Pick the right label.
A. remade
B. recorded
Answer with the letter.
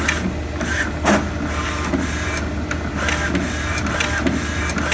B